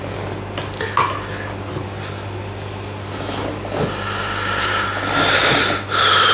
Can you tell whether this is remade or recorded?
recorded